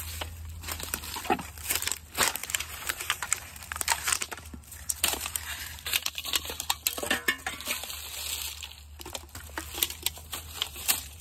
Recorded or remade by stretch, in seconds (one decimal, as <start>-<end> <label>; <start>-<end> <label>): 0.0-2.4 recorded; 2.4-6.1 remade; 6.1-10.2 recorded; 10.2-11.2 remade